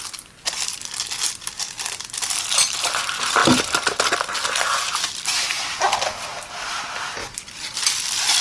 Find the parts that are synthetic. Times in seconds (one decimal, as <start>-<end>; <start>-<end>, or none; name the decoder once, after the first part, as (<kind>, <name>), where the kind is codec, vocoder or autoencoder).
none